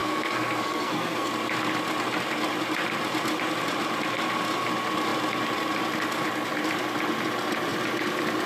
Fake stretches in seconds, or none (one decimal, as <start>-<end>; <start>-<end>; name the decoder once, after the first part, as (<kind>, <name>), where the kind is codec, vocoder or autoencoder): 0.0-1.3 (codec, SNAC)